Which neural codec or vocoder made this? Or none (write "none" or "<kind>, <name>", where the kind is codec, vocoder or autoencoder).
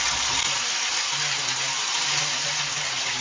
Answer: none